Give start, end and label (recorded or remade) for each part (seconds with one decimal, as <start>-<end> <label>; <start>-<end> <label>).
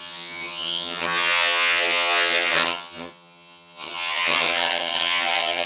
0.0-5.7 remade